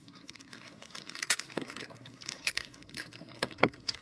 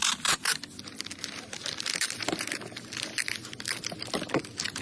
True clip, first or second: second